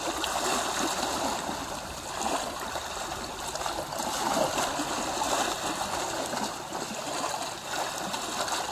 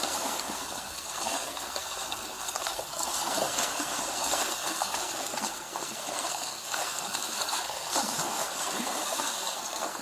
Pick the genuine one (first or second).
first